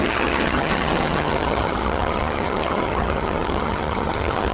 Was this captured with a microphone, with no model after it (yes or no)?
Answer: no